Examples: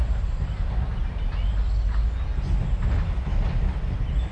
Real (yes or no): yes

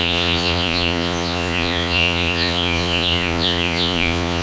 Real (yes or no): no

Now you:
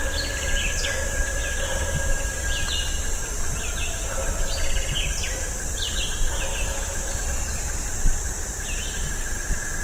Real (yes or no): yes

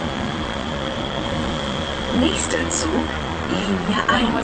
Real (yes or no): no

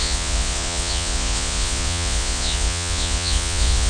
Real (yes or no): no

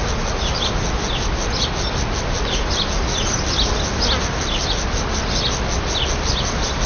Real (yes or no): yes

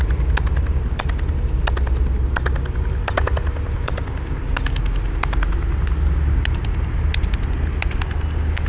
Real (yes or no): yes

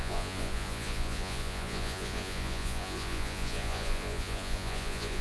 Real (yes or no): no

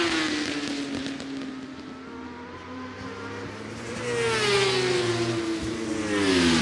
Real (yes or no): yes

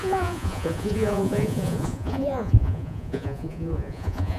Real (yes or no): no